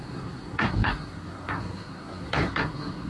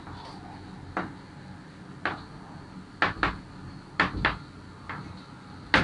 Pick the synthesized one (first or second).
first